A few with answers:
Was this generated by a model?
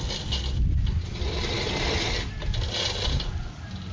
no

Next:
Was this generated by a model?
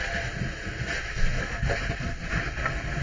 no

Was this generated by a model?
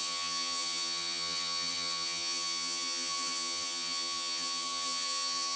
yes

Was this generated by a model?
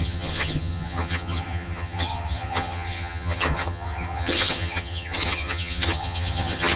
yes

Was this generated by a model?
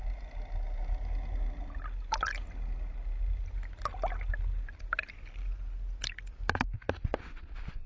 no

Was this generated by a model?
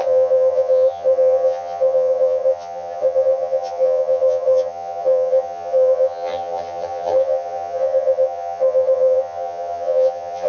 yes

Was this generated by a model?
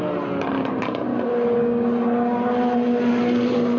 no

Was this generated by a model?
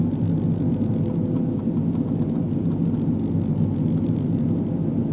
no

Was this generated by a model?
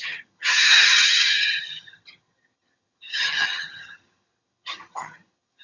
yes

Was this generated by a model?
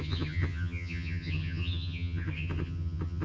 yes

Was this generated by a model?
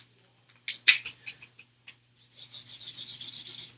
no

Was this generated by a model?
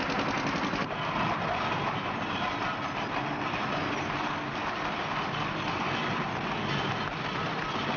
no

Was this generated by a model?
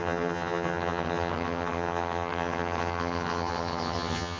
yes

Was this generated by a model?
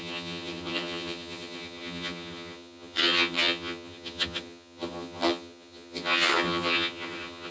yes